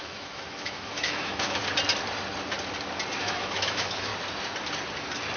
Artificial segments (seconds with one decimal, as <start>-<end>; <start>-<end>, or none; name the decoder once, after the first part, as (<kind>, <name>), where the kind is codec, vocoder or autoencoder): 0.0-1.6 (autoencoder, DAC-VAE); 3.2-4.1